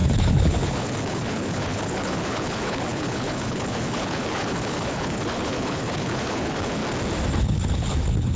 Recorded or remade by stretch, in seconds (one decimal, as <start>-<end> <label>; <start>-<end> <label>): 0.0-6.8 remade; 6.8-7.4 recorded; 7.4-8.4 remade